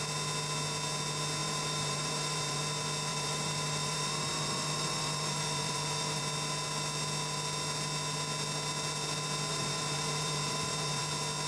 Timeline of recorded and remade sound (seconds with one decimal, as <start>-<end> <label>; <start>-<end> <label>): 0.0-1.4 recorded; 1.4-2.6 remade; 2.6-3.1 recorded; 3.1-6.2 remade; 6.2-9.5 recorded; 9.5-11.0 remade; 11.0-11.5 recorded